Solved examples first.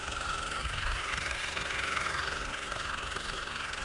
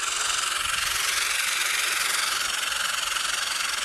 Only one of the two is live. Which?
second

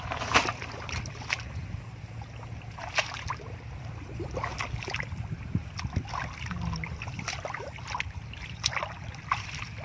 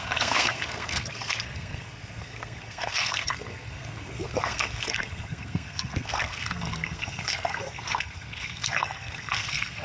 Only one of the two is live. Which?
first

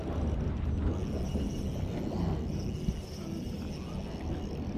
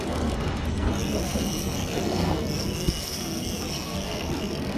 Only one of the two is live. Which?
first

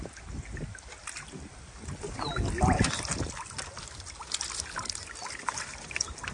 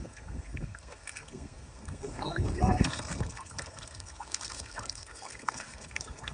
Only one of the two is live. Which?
first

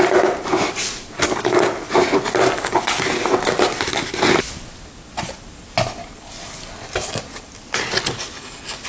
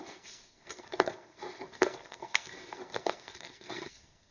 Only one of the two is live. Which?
first